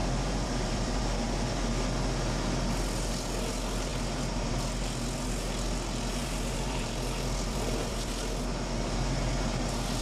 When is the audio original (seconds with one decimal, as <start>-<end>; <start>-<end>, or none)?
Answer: 1.0-6.2; 8.1-10.0